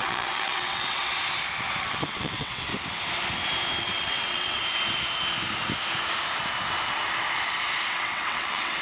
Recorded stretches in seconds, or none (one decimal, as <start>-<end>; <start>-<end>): 1.1-1.8; 2.7-3.8; 4.6-7.9